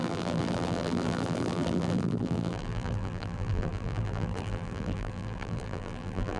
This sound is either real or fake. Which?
fake